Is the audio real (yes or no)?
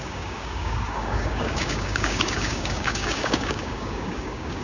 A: no